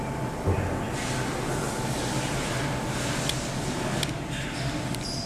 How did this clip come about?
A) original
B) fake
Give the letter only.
A